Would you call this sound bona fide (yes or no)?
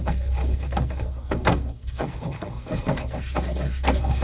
no